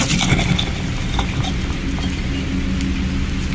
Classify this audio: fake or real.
real